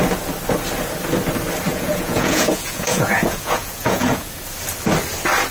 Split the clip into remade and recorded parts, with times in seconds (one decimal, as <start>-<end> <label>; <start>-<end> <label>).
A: 0.0-1.7 recorded; 1.7-4.3 remade; 4.3-5.5 recorded